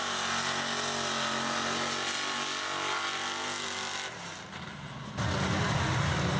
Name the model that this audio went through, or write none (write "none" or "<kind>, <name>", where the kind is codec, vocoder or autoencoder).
none